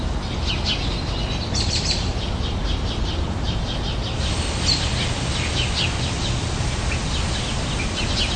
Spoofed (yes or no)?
no